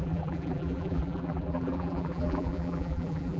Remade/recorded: remade